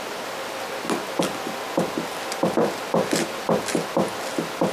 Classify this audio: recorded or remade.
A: recorded